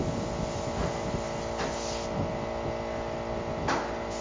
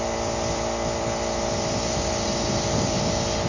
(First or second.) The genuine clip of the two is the first